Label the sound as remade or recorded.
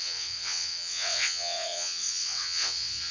remade